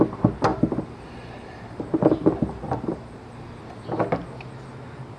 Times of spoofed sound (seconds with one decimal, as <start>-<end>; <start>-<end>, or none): 0.5-3.6